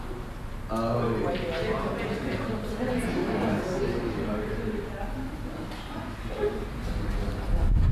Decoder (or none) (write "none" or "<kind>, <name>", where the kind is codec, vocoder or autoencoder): none